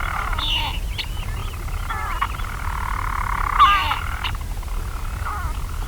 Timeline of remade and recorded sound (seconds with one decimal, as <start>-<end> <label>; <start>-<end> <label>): 0.0-3.8 recorded; 3.8-5.4 remade; 5.4-5.9 recorded